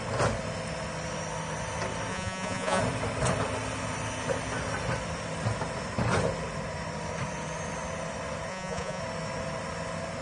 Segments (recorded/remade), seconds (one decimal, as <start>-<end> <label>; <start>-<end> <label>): 0.0-2.1 recorded; 2.1-2.8 remade; 2.8-8.5 recorded; 8.5-9.0 remade; 9.0-10.2 recorded

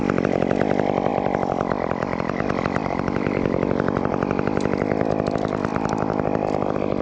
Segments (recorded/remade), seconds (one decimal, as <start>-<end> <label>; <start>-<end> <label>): 0.0-1.1 recorded; 1.1-4.1 remade; 4.1-5.7 recorded; 5.7-7.0 remade